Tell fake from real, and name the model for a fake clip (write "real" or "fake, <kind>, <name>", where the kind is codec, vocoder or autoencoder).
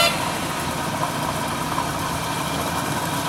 real